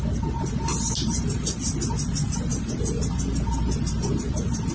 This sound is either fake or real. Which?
real